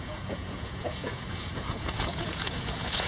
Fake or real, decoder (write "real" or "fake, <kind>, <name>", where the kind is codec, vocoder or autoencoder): fake, vocoder, Vocos